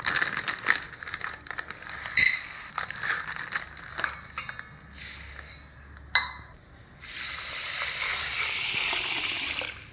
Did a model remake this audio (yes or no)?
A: no